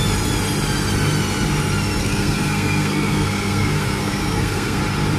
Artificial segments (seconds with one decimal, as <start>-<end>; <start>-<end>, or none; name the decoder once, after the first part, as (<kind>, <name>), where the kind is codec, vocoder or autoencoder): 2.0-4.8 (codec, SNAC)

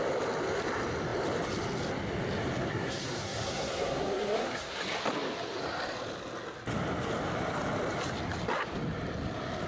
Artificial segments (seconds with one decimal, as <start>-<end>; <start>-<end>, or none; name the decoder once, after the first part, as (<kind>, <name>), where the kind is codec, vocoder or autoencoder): 2.7-4.8 (codec, SNAC)

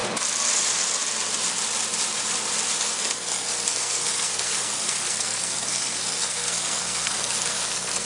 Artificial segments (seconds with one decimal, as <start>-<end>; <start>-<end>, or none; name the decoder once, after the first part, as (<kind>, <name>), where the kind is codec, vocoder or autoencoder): 2.8-8.1 (codec, SNAC)

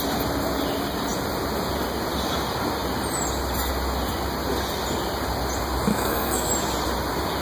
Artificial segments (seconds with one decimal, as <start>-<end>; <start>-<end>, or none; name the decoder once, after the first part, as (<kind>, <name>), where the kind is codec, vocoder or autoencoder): 5.9-6.5 (codec, SNAC)

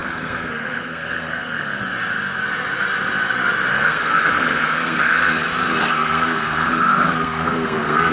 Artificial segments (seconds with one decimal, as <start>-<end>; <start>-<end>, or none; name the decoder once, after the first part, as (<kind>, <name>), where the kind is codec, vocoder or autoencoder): 0.0-1.8 (codec, SNAC); 3.7-5.3; 5.8-8.1

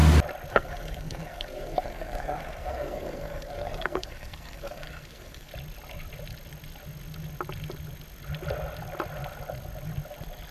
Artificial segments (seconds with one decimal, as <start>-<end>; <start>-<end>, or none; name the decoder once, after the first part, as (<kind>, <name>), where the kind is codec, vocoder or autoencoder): 0.5-5.5 (codec, SNAC)